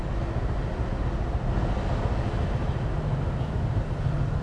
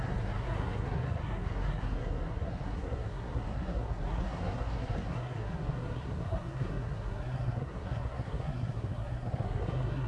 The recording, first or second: first